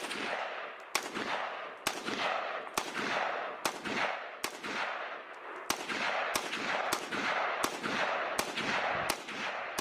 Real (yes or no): yes